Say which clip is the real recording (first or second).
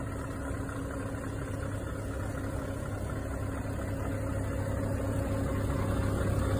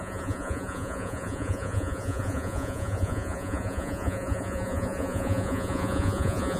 first